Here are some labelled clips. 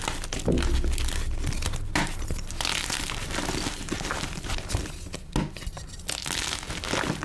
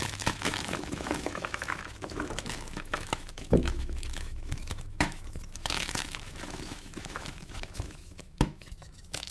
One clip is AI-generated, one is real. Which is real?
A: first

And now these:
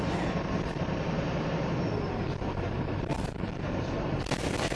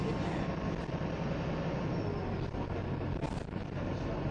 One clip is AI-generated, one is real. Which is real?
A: second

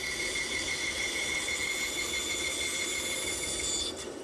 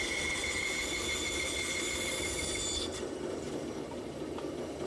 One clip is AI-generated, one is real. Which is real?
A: first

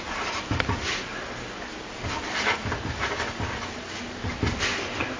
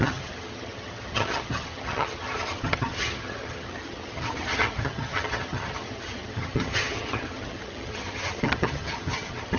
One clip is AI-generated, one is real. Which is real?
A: first